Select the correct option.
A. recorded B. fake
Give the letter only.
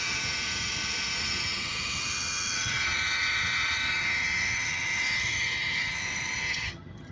B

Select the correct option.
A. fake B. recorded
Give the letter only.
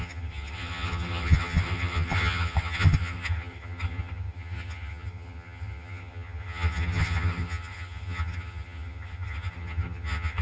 A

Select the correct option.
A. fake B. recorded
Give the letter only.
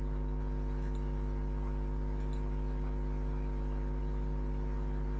B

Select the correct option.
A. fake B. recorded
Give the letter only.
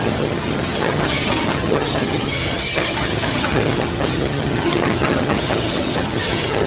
A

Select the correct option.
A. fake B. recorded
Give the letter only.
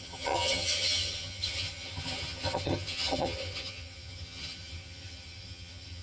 A